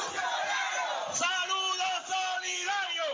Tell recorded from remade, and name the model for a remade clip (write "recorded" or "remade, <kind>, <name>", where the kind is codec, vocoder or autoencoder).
recorded